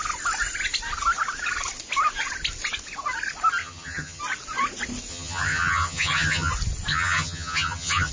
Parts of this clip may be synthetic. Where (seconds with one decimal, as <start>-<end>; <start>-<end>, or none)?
3.6-4.2; 5.1-6.5; 6.9-8.1